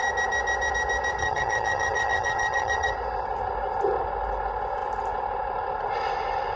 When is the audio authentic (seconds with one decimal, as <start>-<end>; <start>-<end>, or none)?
0.0-1.2; 2.9-6.6